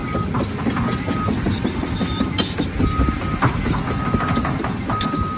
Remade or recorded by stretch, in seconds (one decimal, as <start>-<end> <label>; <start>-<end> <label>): 0.0-5.4 recorded